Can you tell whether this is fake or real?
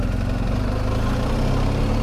real